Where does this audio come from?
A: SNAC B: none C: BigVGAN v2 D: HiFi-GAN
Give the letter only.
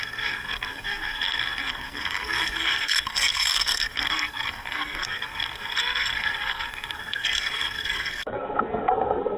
A